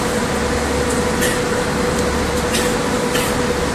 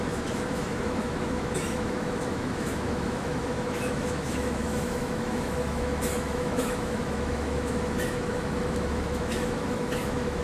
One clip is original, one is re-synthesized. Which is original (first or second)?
first